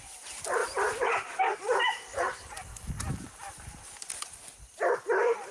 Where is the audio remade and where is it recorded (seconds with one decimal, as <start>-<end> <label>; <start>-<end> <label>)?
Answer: 0.0-2.7 remade; 2.7-3.6 recorded; 3.6-5.5 remade

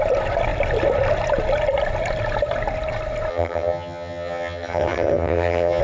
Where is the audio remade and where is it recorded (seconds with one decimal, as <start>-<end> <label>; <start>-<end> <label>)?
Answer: 0.0-3.3 recorded; 3.3-5.8 remade

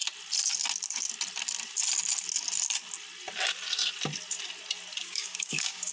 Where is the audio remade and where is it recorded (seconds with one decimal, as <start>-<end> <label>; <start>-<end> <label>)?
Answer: 0.0-5.0 recorded; 5.0-5.9 remade

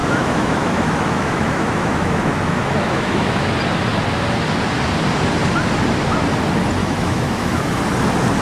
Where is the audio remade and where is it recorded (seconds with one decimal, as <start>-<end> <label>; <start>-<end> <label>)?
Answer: 0.0-3.5 remade; 3.5-6.8 recorded; 6.8-7.8 remade; 7.8-8.4 recorded

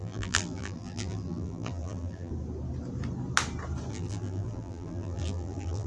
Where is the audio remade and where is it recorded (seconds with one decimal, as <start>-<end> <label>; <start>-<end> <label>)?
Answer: 0.0-2.3 remade; 2.3-3.9 recorded; 3.9-5.9 remade